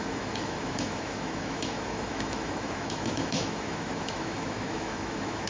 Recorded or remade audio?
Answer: remade